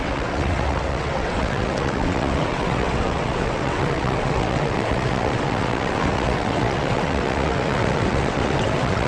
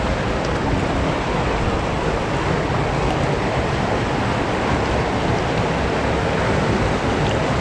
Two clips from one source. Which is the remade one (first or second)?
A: first